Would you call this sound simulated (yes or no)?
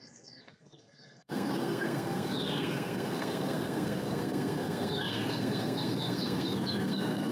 yes